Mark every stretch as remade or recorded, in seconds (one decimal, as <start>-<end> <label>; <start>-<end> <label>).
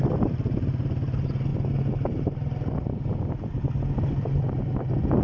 0.0-5.2 recorded